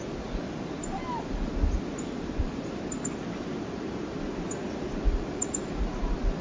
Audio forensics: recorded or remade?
recorded